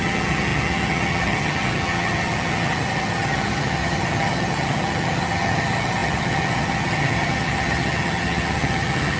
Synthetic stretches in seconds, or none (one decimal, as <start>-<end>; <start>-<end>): 0.0-9.2